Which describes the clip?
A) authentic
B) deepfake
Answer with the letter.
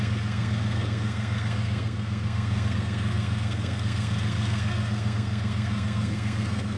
B